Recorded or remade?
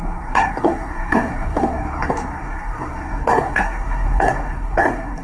remade